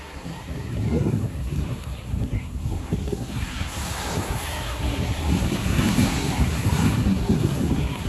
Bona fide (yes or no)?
no